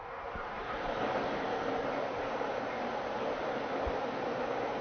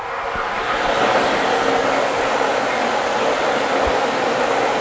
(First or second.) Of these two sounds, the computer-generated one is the first